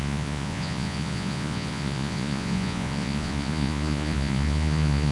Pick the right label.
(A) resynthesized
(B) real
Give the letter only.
A